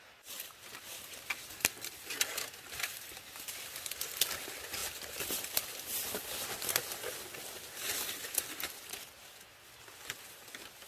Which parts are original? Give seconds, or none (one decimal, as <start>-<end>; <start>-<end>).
0.0-10.9